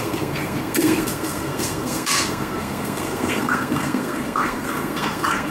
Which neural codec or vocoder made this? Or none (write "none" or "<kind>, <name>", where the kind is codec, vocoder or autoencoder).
codec, SNAC